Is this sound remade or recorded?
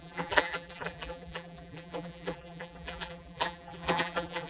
remade